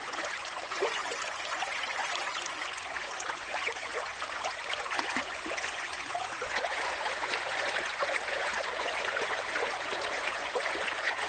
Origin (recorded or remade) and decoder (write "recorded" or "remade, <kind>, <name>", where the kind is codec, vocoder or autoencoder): remade, vocoder, Vocos